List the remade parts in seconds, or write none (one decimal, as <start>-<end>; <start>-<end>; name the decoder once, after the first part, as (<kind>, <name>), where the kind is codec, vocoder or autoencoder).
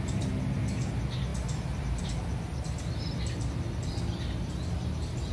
none